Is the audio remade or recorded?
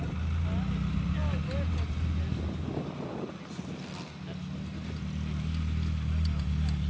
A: recorded